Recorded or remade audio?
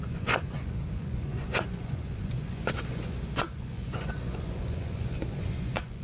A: remade